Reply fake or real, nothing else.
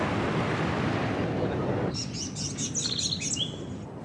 real